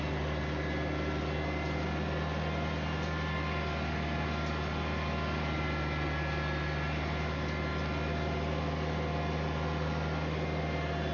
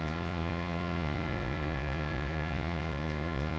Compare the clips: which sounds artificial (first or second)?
second